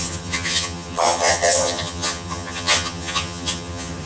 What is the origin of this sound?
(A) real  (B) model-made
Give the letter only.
B